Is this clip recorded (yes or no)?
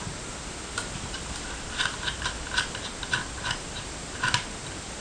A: yes